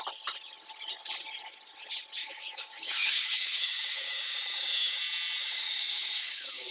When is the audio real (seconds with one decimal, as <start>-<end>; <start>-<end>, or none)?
0.0-2.2; 5.0-5.4